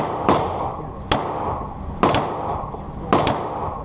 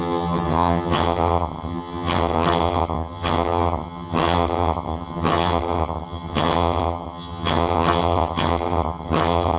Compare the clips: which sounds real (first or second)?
first